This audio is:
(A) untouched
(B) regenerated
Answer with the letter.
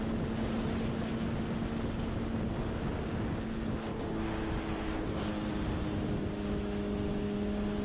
A